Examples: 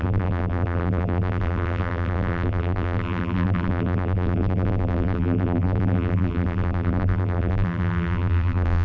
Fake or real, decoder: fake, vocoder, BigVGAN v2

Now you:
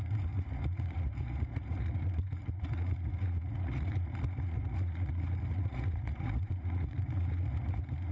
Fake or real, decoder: fake, vocoder, Vocos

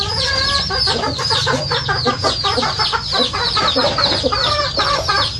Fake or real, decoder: fake, vocoder, BigVGAN v2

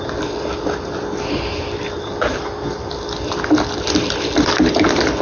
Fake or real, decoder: real